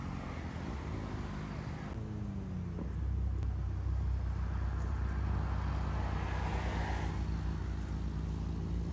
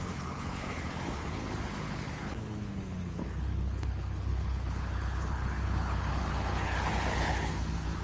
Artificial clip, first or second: second